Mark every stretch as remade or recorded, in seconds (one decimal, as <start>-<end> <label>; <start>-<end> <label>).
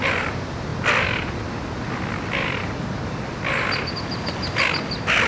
0.0-5.3 recorded